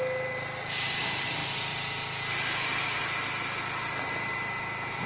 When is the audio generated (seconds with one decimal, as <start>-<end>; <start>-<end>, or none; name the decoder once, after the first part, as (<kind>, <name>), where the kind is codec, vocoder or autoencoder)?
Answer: none